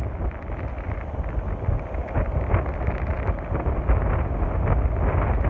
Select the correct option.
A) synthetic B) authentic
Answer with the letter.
B